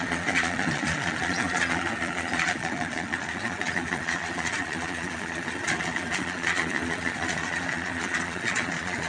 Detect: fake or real fake